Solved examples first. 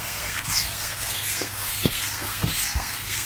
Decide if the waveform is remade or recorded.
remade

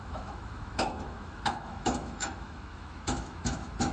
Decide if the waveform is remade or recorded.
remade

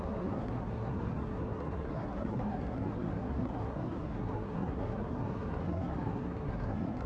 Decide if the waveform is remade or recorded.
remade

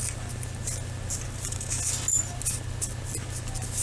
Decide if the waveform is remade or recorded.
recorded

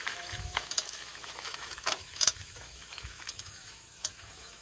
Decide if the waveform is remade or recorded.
remade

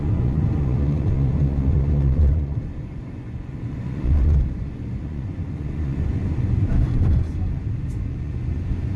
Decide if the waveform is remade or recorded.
remade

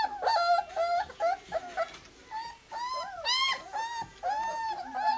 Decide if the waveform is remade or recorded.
recorded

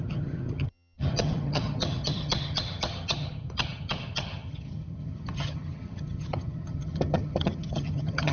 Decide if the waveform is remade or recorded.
remade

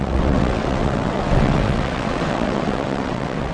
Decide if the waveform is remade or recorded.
remade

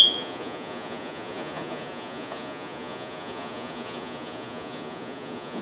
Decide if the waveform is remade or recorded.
remade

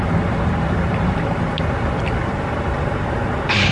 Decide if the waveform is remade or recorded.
recorded